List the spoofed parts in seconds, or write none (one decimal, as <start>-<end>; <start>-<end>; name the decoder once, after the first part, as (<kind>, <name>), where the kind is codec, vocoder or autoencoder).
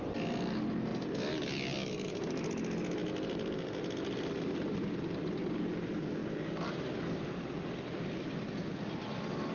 none